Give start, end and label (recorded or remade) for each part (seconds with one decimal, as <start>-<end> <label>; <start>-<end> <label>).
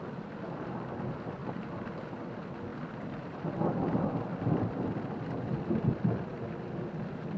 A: 0.0-7.4 recorded